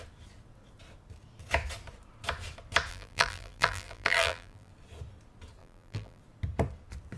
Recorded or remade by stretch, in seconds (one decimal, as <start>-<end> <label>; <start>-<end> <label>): 0.0-2.9 recorded; 2.9-4.7 remade; 4.7-5.6 recorded; 5.6-6.2 remade; 6.2-7.2 recorded